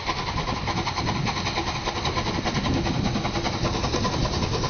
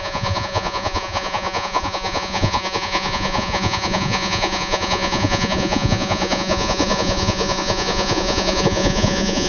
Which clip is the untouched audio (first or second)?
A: first